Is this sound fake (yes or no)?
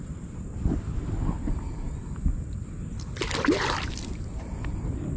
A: no